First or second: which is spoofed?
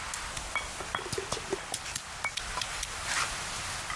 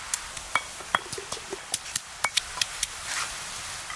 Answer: second